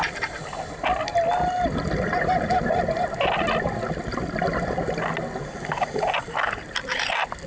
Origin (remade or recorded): recorded